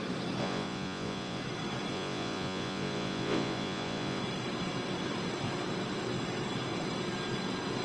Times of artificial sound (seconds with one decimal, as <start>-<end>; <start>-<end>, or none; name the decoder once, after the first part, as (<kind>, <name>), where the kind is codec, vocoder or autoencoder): 0.4-1.4 (vocoder, Vocos); 1.9-4.2